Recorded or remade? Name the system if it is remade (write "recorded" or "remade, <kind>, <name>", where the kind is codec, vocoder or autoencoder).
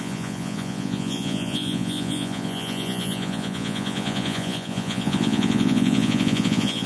remade, vocoder, Vocos